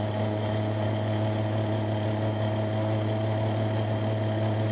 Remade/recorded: recorded